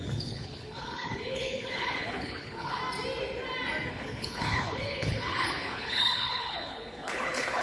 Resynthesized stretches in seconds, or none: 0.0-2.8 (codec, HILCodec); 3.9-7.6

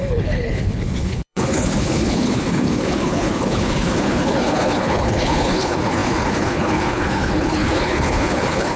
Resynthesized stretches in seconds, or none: 0.0-8.8 (codec, HILCodec)

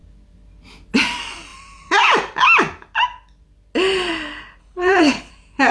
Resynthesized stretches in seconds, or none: 4.6-5.3 (codec, HILCodec)

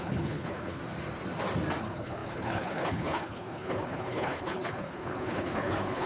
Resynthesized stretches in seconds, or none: 0.0-0.8 (codec, HILCodec); 1.8-6.1

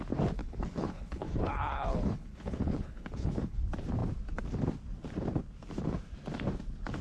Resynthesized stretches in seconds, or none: 0.4-3.6 (codec, HILCodec)

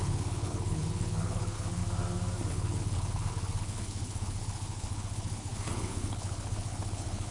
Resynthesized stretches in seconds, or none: 0.0-1.8 (codec, HILCodec); 2.5-7.3

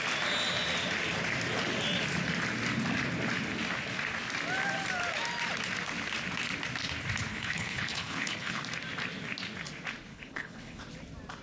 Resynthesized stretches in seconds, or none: 7.3-8.6 (codec, HILCodec); 10.1-10.8